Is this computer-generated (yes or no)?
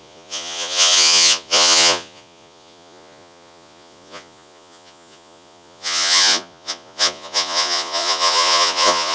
yes